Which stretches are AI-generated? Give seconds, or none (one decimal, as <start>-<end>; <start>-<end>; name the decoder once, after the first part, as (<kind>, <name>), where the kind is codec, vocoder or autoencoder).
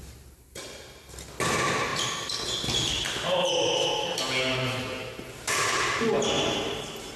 none